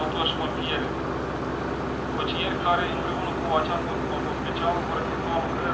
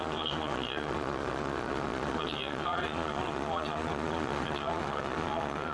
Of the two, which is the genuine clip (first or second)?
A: first